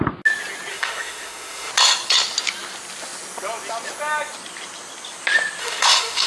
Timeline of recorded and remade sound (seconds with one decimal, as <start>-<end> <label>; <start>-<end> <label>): 0.0-0.7 recorded; 0.7-1.7 remade; 1.7-5.6 recorded; 5.6-6.3 remade